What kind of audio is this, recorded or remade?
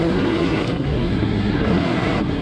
remade